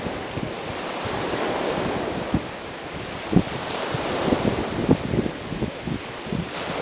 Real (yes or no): yes